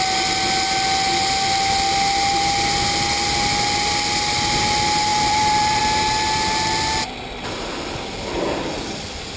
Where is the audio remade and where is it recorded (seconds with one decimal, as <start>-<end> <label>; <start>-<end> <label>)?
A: 0.0-5.1 recorded; 5.1-5.8 remade; 5.8-9.4 recorded